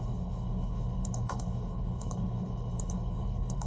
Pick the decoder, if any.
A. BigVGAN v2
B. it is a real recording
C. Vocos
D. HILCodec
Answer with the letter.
D